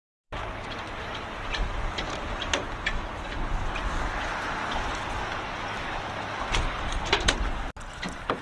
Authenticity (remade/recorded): recorded